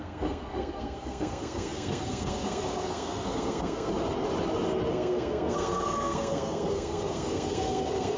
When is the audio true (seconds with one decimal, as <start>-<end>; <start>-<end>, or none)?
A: 3.9-4.9